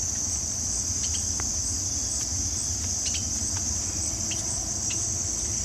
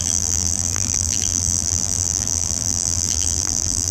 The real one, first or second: first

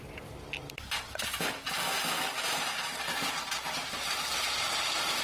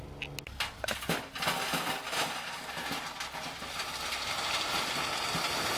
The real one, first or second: second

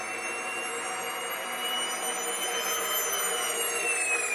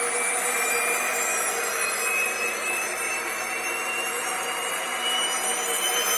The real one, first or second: first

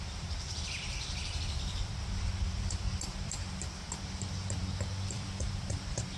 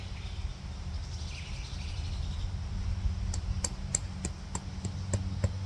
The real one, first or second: second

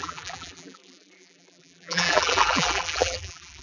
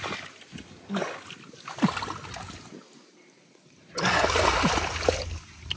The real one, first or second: second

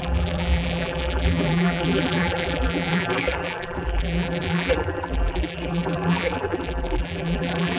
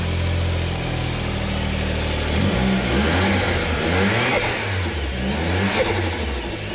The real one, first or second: second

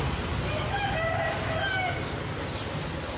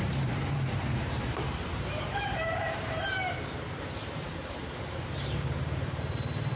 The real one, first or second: first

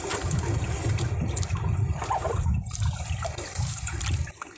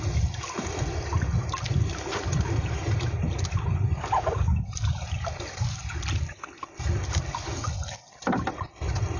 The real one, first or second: second